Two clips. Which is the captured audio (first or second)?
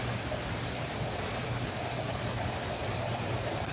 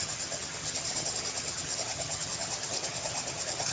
first